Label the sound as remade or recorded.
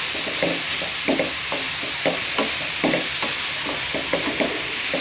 recorded